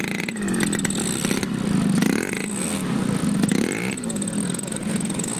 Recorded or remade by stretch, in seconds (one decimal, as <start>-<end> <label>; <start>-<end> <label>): 0.0-3.2 recorded; 3.2-4.9 remade; 4.9-5.4 recorded